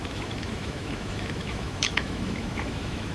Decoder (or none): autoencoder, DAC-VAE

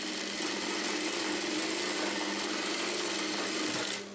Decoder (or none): none